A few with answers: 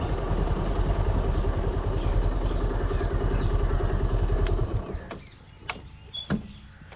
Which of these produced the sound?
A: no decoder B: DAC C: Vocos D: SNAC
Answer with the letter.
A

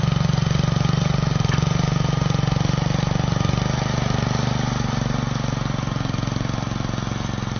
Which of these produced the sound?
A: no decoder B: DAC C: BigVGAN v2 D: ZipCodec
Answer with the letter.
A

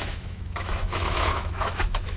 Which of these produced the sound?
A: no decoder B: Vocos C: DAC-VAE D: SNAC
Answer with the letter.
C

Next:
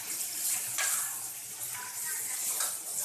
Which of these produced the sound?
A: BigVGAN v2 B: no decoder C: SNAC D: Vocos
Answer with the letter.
A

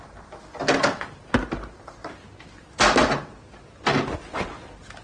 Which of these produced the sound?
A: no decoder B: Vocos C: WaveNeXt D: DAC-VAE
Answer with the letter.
A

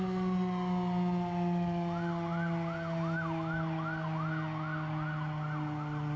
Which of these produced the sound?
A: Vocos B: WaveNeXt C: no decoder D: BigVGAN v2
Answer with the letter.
C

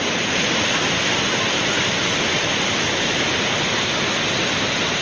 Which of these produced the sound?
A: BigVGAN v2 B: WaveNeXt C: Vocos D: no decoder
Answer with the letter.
D